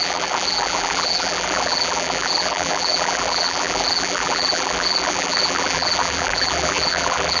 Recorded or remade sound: remade